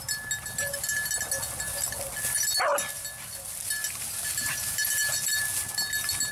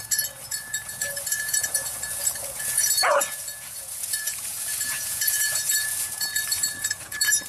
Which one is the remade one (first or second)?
second